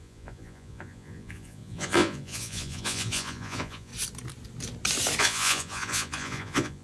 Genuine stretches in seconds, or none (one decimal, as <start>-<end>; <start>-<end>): 3.9-5.2

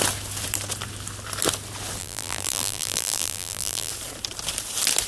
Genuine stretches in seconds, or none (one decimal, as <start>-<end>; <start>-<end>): 0.0-2.0; 3.9-5.1

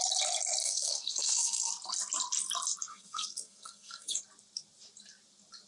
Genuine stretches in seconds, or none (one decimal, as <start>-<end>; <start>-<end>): 0.0-0.6; 1.7-2.9; 4.2-5.7